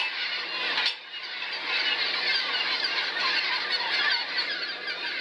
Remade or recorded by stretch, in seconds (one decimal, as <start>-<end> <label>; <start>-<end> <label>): 0.0-2.3 recorded; 2.3-5.2 remade